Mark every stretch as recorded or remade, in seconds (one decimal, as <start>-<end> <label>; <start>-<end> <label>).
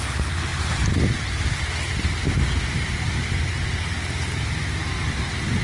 0.0-5.6 recorded